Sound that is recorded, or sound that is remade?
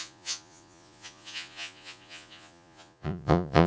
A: remade